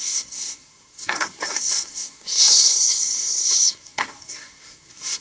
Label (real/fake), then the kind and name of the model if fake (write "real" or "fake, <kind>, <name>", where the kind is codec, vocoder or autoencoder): fake, codec, SNAC